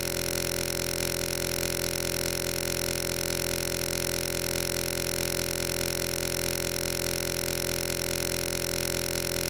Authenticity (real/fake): real